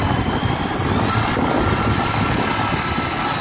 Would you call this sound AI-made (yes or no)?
no